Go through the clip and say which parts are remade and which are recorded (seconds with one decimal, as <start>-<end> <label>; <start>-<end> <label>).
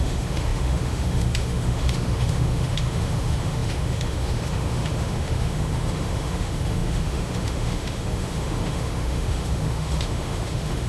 0.0-10.9 remade